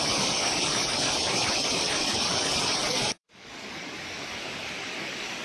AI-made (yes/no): yes